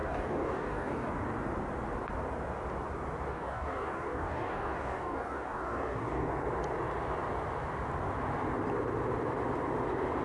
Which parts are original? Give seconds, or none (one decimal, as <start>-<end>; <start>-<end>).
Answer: 1.1-3.3; 6.3-10.2